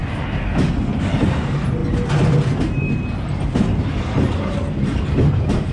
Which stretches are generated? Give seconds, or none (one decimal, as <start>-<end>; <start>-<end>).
1.3-1.8; 4.8-5.7